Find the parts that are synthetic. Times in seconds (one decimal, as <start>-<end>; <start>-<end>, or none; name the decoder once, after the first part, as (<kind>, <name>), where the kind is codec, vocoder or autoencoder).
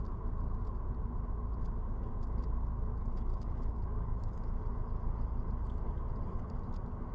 3.3-4.5 (codec, DAC)